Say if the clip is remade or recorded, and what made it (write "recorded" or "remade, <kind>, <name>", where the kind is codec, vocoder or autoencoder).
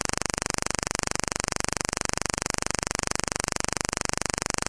recorded